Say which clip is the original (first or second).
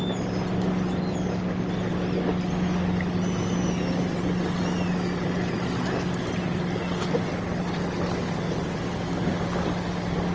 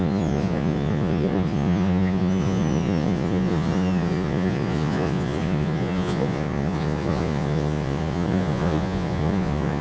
first